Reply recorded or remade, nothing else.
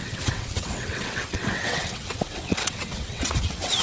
remade